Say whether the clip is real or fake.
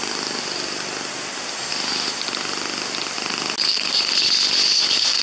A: real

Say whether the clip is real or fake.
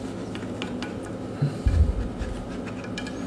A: real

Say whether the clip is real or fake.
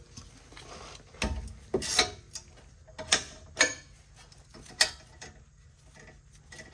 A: real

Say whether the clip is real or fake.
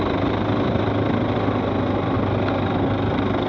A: real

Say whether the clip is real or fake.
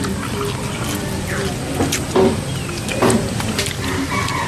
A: real